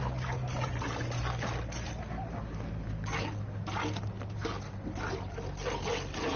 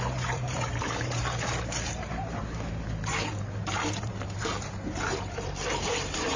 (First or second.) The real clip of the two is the first